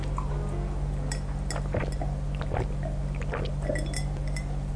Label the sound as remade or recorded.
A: recorded